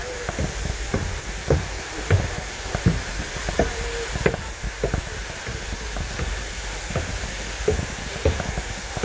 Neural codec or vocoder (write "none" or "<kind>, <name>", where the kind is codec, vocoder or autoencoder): vocoder, BigVGAN v2